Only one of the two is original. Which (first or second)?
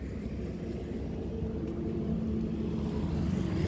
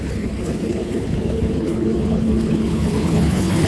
first